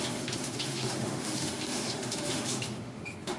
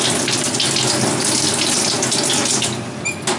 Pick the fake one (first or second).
first